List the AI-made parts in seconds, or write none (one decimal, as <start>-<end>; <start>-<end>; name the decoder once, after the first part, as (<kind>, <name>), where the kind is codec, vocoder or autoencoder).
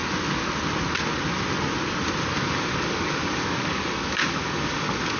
2.4-5.2 (codec, DAC)